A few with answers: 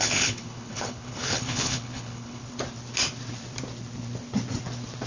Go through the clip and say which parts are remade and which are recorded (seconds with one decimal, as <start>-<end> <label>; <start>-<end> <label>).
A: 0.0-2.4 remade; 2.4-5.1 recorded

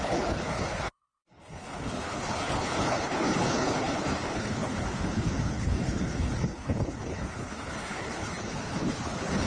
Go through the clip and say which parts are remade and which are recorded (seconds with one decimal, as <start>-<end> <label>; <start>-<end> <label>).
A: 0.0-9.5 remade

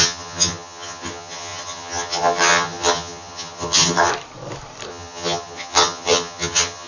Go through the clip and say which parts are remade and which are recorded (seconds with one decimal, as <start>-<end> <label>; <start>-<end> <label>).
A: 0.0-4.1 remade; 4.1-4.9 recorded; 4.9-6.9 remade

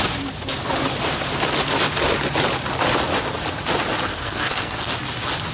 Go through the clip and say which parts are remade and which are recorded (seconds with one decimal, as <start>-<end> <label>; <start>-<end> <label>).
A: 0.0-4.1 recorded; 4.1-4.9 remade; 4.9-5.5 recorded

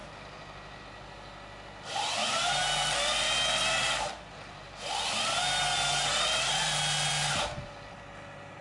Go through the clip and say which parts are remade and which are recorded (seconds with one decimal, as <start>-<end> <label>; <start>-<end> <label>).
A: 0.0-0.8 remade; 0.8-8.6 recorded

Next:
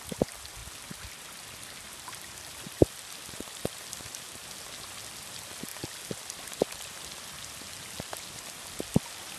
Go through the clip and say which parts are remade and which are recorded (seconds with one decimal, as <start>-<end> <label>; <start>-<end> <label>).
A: 0.0-9.4 recorded

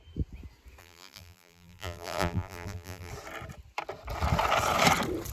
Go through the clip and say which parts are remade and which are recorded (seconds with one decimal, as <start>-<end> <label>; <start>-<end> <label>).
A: 0.0-0.8 recorded; 0.8-3.1 remade; 3.1-5.3 recorded

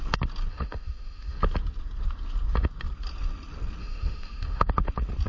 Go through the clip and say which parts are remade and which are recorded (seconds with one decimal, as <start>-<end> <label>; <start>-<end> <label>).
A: 0.0-0.5 recorded; 0.5-1.4 remade; 1.4-3.8 recorded; 3.8-4.7 remade; 4.7-5.3 recorded